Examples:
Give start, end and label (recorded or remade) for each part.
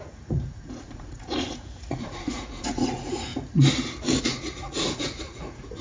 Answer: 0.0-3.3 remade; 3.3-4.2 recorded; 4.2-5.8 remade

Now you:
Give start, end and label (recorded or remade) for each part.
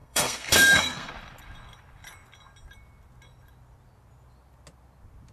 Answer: 0.0-1.1 remade; 1.1-5.3 recorded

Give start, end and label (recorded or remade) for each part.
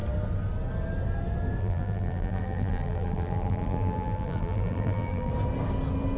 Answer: 0.0-1.6 recorded; 1.6-5.3 remade; 5.3-6.2 recorded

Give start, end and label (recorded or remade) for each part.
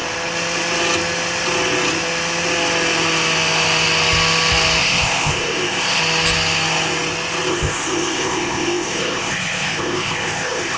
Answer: 0.0-4.8 recorded; 4.8-6.0 remade; 6.0-7.5 recorded; 7.5-10.8 remade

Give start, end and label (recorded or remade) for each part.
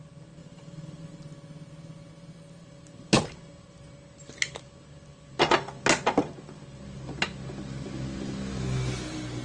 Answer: 0.0-9.4 recorded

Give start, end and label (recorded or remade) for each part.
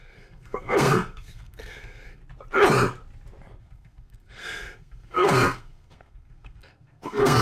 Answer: 0.0-2.2 remade; 2.2-3.6 recorded; 3.6-7.4 remade